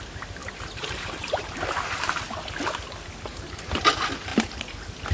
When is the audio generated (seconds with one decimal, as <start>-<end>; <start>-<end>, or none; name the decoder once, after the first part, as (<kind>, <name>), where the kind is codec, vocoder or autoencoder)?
0.4-2.2 (vocoder, BigVGAN v2); 3.3-3.8

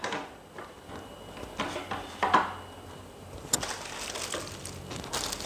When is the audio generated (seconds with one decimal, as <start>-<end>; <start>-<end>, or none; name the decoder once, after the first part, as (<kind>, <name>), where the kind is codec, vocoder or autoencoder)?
none

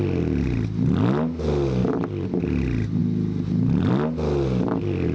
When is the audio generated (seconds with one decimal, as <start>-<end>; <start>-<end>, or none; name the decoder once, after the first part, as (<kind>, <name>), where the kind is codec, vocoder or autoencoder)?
none

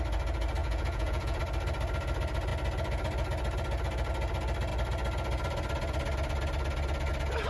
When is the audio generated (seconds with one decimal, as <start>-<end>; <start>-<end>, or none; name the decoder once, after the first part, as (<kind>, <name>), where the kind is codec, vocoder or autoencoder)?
0.6-1.4 (vocoder, Vocos)